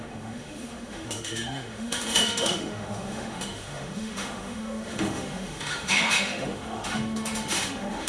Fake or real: fake